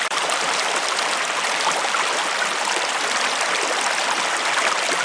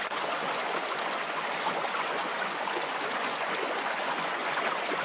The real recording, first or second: first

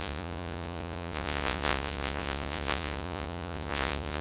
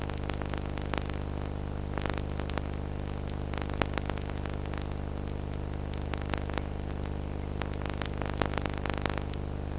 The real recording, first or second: second